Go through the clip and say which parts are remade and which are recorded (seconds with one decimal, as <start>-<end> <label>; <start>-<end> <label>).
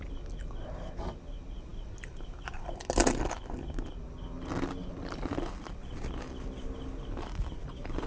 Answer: 0.0-8.1 recorded